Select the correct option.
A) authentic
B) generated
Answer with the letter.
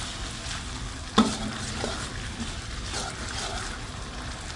A